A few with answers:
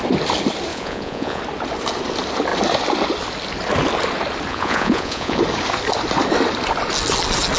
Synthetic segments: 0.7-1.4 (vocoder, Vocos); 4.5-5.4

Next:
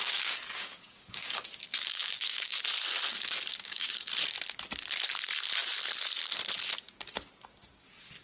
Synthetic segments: 0.0-2.6 (codec, DAC); 3.5-4.1

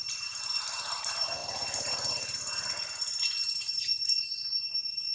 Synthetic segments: none

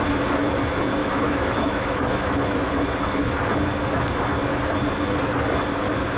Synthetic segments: 1.0-2.7 (autoencoder, DAC-VAE)

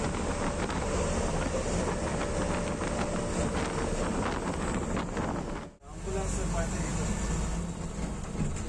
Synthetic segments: none